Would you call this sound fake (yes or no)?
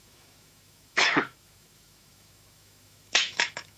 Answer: yes